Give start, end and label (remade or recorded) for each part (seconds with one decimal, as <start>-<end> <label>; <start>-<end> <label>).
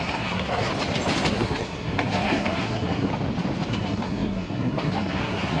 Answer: 0.0-0.7 remade; 0.7-1.3 recorded; 1.3-3.1 remade; 3.1-3.7 recorded; 3.7-5.6 remade